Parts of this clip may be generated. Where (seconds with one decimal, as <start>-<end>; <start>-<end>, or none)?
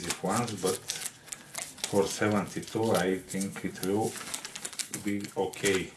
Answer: 3.1-3.7; 4.8-5.3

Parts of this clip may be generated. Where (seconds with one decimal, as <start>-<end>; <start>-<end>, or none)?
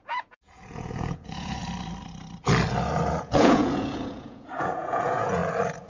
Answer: 0.0-1.6; 3.2-5.4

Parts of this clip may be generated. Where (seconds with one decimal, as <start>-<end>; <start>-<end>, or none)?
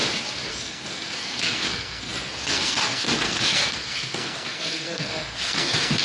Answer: 0.5-6.0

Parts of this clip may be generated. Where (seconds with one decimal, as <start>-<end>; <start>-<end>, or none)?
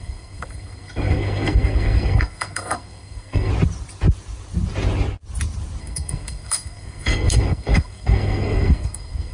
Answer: 0.0-3.5; 5.8-9.3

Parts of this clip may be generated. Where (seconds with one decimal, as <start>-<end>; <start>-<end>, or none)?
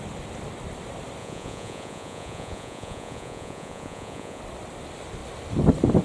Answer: 1.2-4.4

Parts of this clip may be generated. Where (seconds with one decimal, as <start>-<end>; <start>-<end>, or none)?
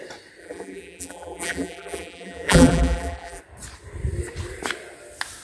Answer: 0.4-3.4